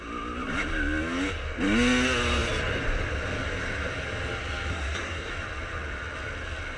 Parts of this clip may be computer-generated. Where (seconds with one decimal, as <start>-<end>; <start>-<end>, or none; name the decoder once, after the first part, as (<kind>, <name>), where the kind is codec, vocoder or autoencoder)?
4.7-5.3 (codec, SNAC)